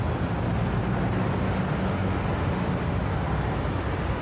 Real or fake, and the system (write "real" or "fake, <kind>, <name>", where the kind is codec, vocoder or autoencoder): real